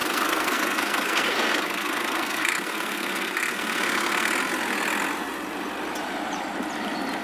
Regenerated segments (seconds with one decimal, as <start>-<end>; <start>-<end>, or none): 0.0-4.3